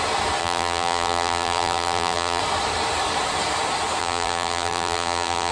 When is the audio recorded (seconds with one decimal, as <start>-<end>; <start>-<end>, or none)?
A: 0.0-0.4; 2.4-4.0